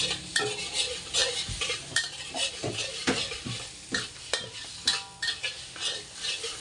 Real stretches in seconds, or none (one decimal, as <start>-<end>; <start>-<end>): 0.0-1.2; 2.5-6.6